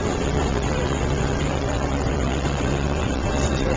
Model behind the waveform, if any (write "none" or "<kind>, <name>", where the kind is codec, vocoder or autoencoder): vocoder, WaveNeXt